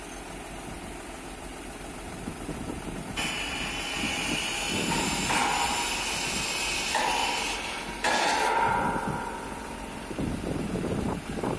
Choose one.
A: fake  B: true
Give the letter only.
B